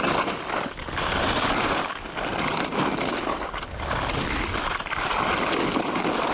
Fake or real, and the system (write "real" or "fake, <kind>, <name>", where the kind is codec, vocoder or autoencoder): real